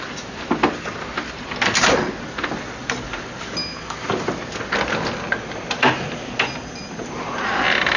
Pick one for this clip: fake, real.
real